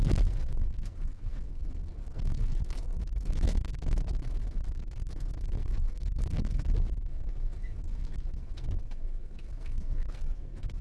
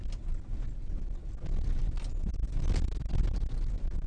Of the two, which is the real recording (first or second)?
second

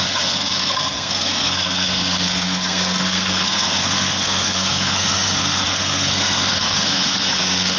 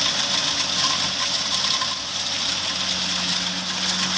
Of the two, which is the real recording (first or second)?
second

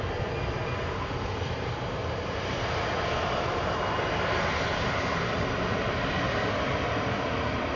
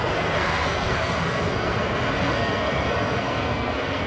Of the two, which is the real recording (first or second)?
first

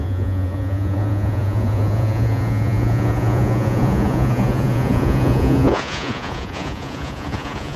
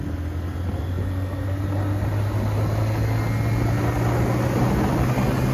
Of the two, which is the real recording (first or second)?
second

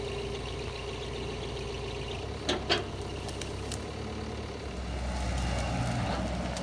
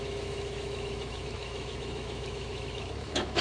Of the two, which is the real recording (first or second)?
first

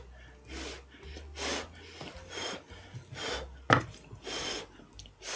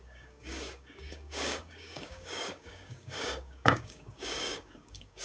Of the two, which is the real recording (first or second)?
first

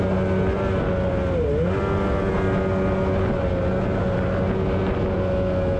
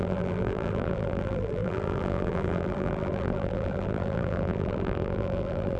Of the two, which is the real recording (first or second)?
first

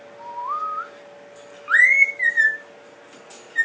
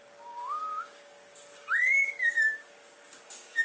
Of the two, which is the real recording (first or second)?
first